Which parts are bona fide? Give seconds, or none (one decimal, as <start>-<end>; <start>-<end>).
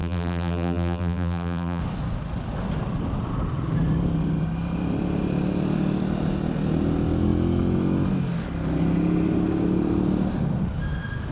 1.8-11.3